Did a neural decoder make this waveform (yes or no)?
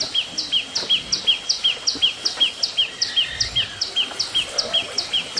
no